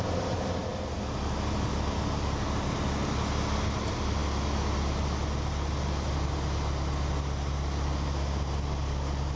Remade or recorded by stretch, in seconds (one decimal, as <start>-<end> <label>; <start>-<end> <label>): 0.0-9.4 recorded